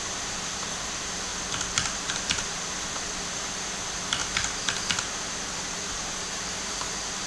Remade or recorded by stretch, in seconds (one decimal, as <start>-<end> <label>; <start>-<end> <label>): 0.0-1.3 remade; 1.3-2.1 recorded; 2.1-4.2 remade; 4.2-5.5 recorded; 5.5-7.3 remade